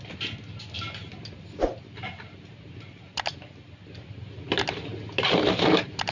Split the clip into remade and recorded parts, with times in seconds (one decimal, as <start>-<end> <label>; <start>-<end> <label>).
0.0-6.1 recorded